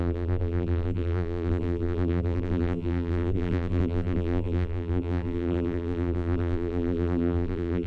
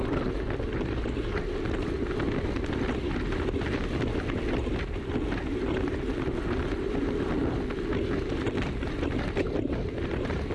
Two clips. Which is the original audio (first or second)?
second